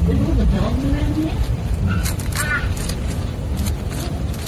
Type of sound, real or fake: fake